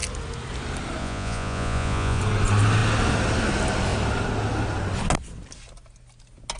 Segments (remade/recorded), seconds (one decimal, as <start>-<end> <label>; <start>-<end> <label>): 0.0-1.0 recorded; 1.0-2.2 remade; 2.2-6.6 recorded